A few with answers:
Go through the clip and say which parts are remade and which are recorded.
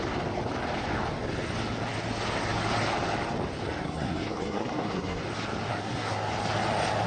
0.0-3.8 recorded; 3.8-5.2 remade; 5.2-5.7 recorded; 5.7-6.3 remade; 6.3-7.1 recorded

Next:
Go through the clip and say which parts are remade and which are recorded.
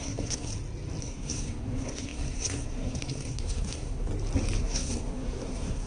0.0-0.5 remade; 0.5-1.0 recorded; 1.0-4.1 remade; 4.1-4.6 recorded; 4.6-5.9 remade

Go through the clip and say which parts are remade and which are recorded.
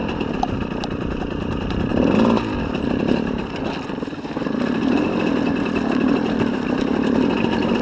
0.0-7.8 recorded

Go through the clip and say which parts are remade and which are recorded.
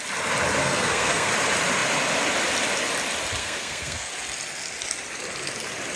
0.0-0.6 recorded; 0.6-1.3 remade; 1.3-3.4 recorded; 3.4-4.1 remade; 4.1-6.0 recorded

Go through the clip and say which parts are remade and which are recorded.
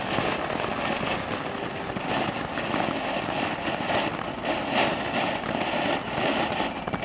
0.0-7.0 recorded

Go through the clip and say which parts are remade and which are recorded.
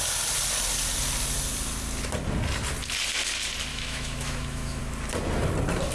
0.0-3.7 recorded; 3.7-4.8 remade; 4.8-5.9 recorded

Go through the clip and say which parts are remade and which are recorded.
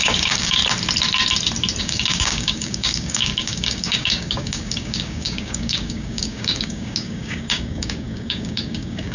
0.0-0.6 remade; 0.6-1.8 recorded; 1.8-9.1 remade